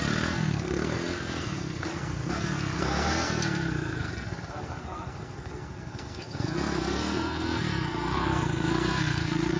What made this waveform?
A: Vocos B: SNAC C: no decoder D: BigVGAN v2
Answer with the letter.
B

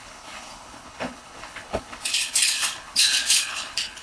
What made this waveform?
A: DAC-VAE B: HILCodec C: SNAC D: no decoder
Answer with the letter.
B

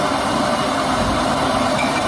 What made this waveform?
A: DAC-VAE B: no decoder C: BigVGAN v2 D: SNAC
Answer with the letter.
C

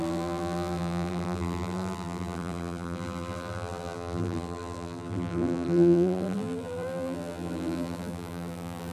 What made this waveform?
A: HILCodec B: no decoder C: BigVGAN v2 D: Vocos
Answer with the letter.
C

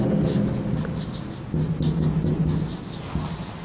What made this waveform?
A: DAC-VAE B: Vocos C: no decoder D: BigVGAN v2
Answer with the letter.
C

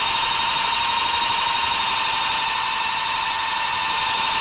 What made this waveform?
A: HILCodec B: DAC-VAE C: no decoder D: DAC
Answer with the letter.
C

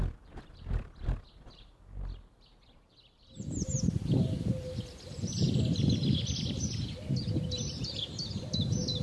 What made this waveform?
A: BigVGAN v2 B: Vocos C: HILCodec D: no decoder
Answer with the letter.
A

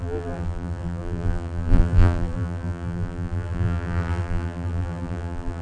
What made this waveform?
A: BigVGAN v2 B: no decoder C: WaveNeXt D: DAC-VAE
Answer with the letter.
A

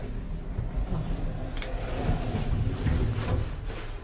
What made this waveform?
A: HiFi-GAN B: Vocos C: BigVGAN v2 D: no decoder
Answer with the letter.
D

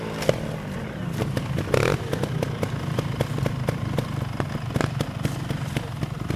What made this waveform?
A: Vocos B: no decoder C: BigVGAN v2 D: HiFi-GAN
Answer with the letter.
B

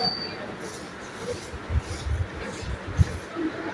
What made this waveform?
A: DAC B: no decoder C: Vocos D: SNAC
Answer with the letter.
B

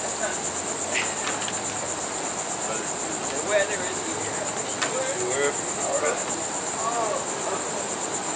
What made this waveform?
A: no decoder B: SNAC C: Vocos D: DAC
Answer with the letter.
A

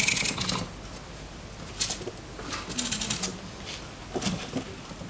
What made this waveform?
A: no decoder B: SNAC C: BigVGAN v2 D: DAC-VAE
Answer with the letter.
A